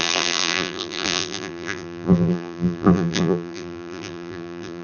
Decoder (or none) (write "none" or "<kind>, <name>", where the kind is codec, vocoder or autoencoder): vocoder, BigVGAN v2